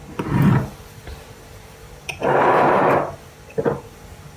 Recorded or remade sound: remade